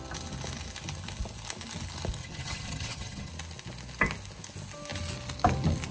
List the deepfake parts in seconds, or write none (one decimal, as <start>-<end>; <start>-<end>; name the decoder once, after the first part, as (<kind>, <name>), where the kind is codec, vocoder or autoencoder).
2.2-3.3 (vocoder, HiFi-GAN)